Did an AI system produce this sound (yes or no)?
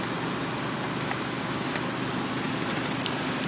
no